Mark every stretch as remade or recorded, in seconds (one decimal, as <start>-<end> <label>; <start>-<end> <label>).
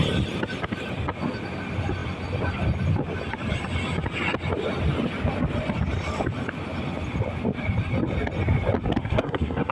0.0-9.0 recorded; 9.0-9.7 remade